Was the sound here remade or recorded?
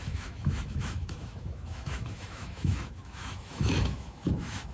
remade